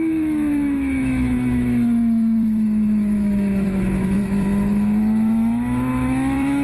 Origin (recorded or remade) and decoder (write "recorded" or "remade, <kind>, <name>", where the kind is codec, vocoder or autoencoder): remade, autoencoder, DAC-VAE